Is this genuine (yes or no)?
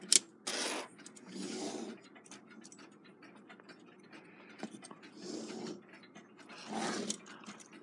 yes